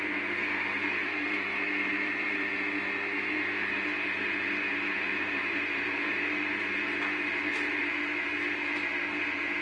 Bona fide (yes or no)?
no